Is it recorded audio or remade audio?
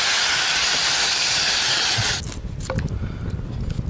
recorded